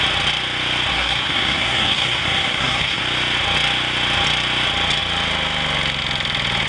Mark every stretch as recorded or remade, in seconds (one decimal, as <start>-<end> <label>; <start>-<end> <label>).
0.0-0.9 recorded; 0.9-3.0 remade; 3.0-6.7 recorded